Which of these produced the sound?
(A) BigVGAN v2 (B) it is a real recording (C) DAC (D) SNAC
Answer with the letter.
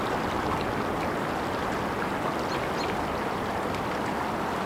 B